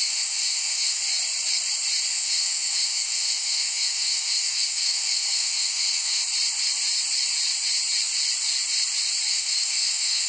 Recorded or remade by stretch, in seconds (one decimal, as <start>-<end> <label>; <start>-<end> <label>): 0.0-1.0 remade; 1.0-2.1 recorded; 2.1-6.2 remade; 6.2-9.3 recorded; 9.3-10.3 remade